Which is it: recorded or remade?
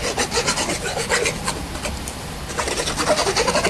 recorded